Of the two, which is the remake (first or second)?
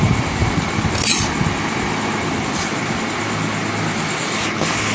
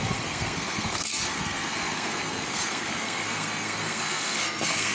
second